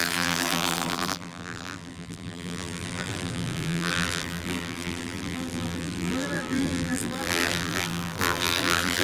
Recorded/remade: remade